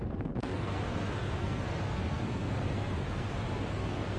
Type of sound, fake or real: fake